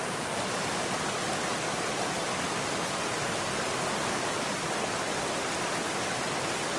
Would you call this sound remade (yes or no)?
no